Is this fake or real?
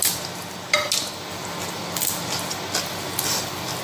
real